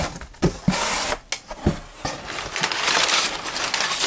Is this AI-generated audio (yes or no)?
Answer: no